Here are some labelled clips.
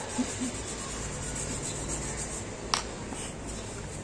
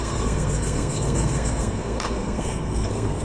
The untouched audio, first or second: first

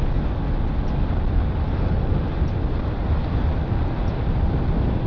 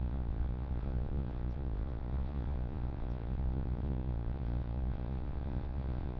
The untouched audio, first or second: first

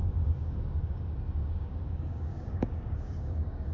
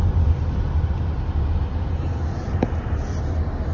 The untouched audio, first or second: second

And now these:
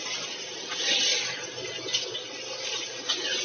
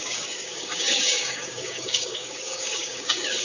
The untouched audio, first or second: first